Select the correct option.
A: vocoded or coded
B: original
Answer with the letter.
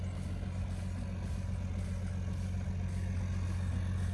B